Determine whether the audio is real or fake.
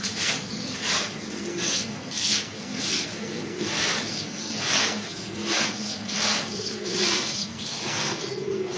fake